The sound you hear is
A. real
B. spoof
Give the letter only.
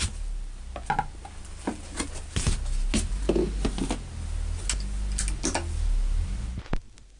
A